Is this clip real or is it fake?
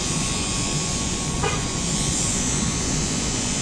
fake